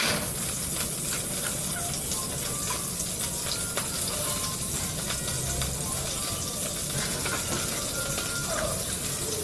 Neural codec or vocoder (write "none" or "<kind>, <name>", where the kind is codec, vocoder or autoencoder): none